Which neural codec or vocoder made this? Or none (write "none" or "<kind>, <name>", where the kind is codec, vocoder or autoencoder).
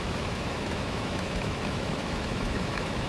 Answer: autoencoder, DAC-VAE